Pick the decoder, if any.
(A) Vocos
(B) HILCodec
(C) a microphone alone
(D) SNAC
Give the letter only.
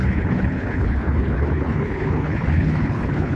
B